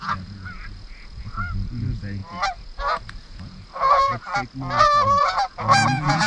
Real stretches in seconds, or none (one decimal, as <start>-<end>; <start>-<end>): 4.3-5.2